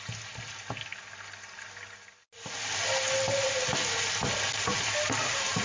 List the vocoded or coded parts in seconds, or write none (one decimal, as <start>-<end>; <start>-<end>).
none